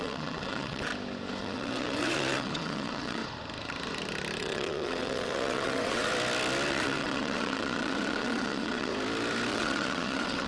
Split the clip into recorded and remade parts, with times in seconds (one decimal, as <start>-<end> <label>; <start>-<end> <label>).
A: 0.0-0.9 remade; 0.9-1.4 recorded; 1.4-3.2 remade; 3.2-4.4 recorded; 4.4-6.1 remade; 6.1-6.7 recorded; 6.7-8.9 remade; 8.9-9.5 recorded; 9.5-10.5 remade